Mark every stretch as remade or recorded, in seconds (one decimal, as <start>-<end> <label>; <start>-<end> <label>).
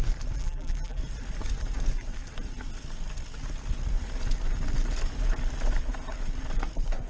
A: 0.0-0.4 recorded; 0.4-1.0 remade; 1.0-7.1 recorded